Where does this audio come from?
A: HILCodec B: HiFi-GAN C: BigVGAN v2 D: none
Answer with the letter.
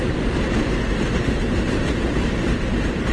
C